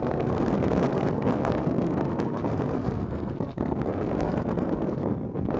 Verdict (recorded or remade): remade